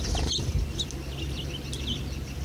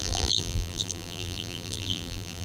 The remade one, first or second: second